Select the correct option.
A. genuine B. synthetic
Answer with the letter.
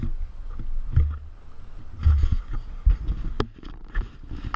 A